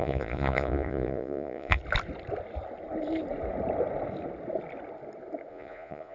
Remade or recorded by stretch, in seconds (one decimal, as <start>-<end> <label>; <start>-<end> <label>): 0.0-1.8 remade; 1.8-5.5 recorded; 5.5-6.1 remade